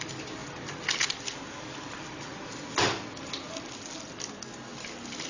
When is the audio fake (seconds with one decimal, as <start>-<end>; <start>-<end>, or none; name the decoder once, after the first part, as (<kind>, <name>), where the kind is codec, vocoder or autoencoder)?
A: none